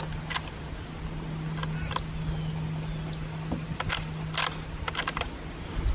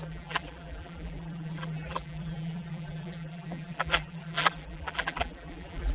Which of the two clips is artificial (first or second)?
second